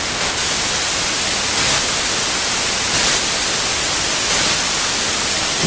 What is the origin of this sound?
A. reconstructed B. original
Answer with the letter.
A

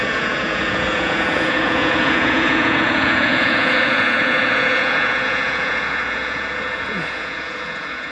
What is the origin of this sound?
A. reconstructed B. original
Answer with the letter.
A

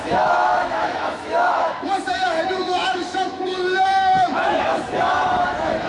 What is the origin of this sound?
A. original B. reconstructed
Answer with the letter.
B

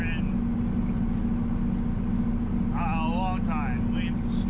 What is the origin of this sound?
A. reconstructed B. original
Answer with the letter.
B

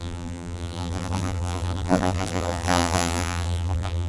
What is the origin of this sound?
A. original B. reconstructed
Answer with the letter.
B